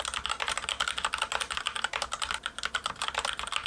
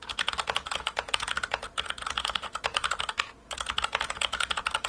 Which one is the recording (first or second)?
first